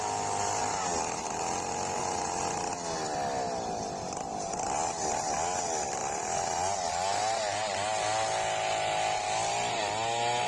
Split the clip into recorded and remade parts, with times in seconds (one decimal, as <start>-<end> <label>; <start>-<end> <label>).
0.0-10.5 recorded